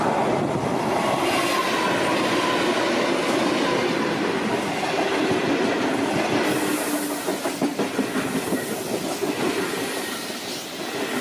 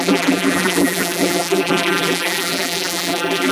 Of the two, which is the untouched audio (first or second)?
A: first